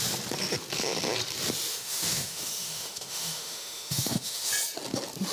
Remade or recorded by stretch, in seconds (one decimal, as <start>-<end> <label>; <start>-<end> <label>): 0.0-1.7 recorded; 1.7-4.5 remade; 4.5-5.3 recorded